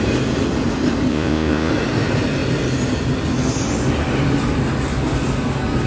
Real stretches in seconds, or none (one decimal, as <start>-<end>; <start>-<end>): 0.0-1.1; 1.7-5.9